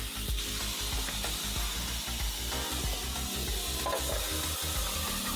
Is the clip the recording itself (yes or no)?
yes